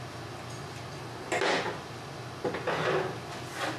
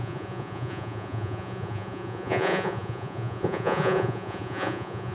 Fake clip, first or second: second